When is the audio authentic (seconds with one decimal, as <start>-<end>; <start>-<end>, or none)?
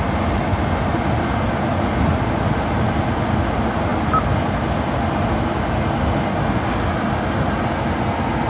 0.0-8.5